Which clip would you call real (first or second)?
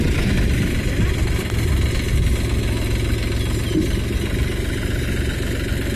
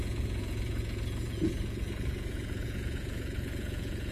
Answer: first